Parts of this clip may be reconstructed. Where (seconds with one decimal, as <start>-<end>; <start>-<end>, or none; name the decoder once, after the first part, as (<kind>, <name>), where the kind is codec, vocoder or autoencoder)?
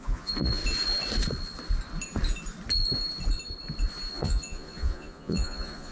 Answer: 0.0-0.6 (vocoder, Vocos); 4.1-5.9